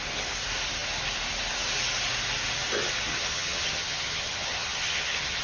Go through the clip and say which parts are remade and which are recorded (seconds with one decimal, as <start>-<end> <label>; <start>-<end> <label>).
0.0-3.1 recorded; 3.1-5.4 remade